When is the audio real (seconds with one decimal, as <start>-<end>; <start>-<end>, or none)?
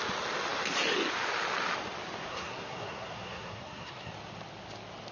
0.0-2.3; 4.1-5.1